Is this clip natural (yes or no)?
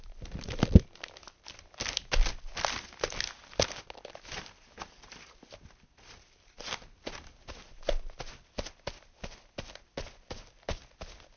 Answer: yes